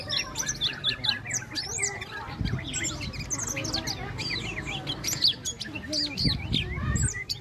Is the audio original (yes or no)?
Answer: yes